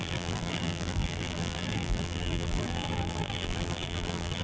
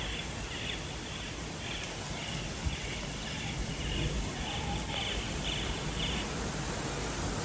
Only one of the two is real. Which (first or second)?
second